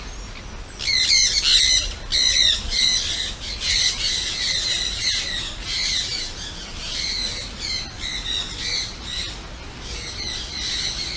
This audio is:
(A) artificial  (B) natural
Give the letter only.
B